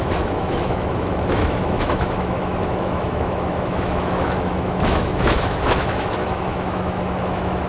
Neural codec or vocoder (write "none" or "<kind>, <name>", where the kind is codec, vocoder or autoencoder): autoencoder, DAC-VAE